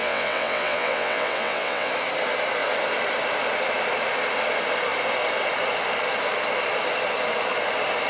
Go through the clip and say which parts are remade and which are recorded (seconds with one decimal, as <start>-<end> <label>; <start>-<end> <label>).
0.0-1.9 remade; 1.9-8.1 recorded